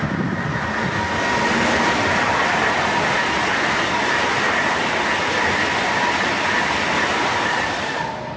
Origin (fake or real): real